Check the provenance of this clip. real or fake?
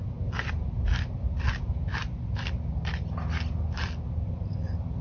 real